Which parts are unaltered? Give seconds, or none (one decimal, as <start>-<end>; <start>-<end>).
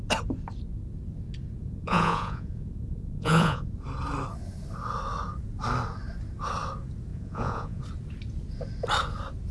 0.0-1.6; 3.7-7.1; 7.8-9.5